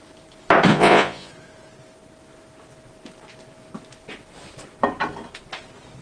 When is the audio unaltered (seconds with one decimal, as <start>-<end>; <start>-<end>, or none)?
0.0-0.7; 1.3-6.0

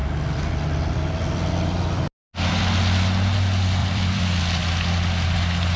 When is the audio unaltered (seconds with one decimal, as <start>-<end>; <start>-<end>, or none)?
0.0-3.8; 4.4-5.8

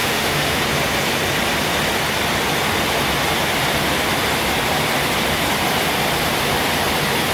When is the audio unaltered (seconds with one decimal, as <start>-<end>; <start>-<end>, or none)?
0.6-7.3

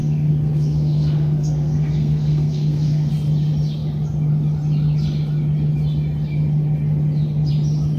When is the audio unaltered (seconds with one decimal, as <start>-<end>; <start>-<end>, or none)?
3.1-8.0

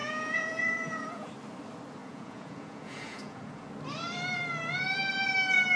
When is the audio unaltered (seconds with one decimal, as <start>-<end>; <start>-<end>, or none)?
1.3-2.0; 3.7-5.8